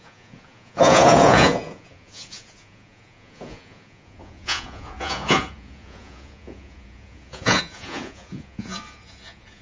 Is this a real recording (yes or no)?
no